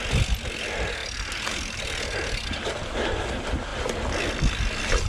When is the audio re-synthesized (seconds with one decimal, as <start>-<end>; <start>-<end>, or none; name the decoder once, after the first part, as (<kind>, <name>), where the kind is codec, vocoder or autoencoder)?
none